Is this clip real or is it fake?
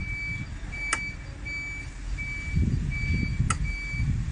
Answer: real